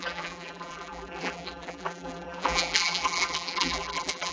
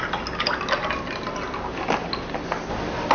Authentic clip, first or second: second